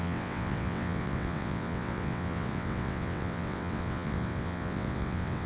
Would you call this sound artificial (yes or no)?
yes